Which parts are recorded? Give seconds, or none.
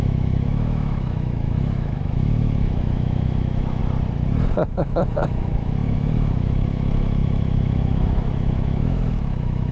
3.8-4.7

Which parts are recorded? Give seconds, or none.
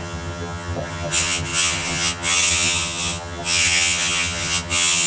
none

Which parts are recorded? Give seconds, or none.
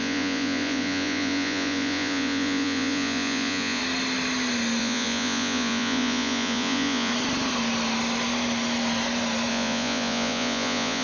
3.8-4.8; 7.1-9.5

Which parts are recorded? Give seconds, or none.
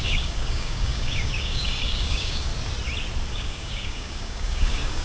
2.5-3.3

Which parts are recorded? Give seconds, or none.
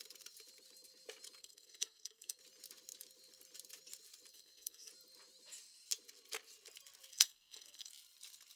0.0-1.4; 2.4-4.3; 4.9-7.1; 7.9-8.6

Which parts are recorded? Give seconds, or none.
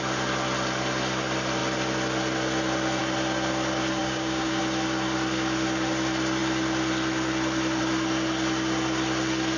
0.0-4.0; 4.6-9.6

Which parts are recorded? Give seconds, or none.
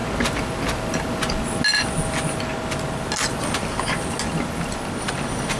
0.0-5.6